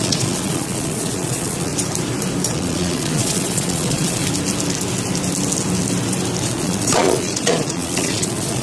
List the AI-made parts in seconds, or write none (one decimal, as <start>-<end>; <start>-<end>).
0.0-1.7; 2.5-4.2; 6.4-8.6